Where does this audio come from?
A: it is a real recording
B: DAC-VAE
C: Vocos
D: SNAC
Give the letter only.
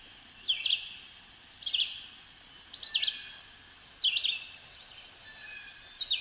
A